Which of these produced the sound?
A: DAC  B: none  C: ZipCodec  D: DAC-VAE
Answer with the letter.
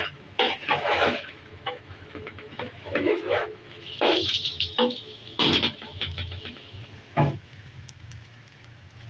D